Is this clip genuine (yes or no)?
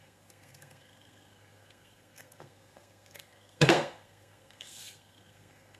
no